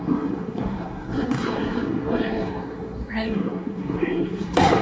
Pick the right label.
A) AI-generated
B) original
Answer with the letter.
A